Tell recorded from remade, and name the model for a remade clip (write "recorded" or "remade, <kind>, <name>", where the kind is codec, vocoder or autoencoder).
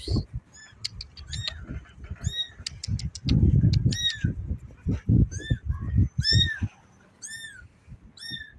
recorded